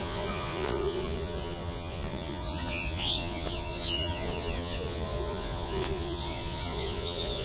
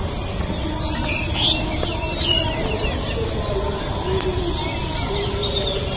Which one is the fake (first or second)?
first